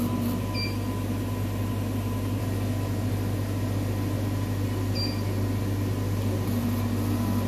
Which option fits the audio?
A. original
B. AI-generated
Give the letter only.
A